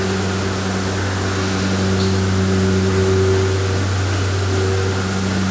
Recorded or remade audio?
recorded